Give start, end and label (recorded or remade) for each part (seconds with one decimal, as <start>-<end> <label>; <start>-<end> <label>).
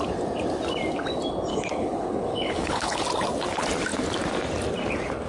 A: 0.0-1.5 recorded; 1.5-3.0 remade; 3.0-5.3 recorded